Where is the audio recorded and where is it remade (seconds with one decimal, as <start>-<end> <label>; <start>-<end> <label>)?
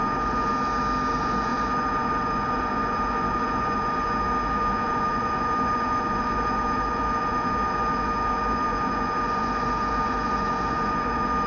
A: 0.0-0.5 remade; 0.5-1.1 recorded; 1.1-11.5 remade